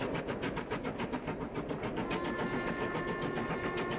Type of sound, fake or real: real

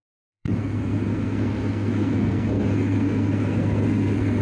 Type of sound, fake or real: fake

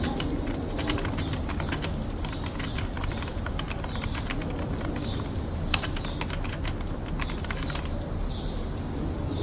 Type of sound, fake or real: real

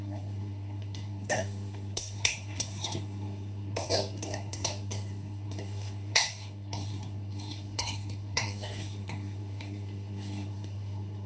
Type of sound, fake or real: fake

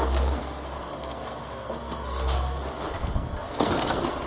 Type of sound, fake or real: fake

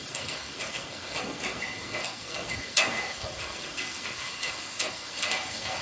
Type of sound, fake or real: fake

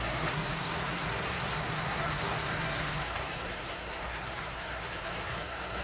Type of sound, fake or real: fake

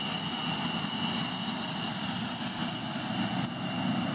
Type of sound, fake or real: real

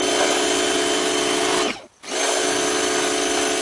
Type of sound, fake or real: real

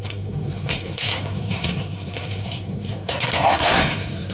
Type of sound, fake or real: fake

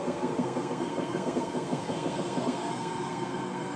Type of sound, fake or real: fake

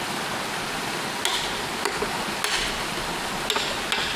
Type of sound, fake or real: real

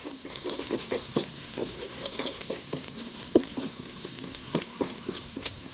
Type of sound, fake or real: fake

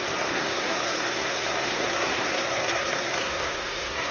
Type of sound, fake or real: fake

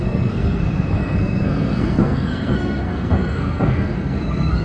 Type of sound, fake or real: fake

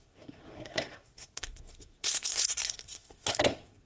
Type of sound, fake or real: fake